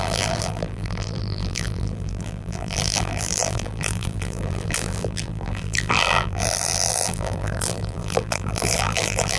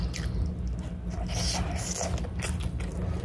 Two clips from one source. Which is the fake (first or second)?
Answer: first